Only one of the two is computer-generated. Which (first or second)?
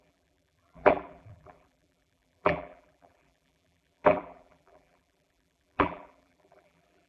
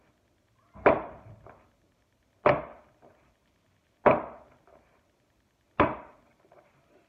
first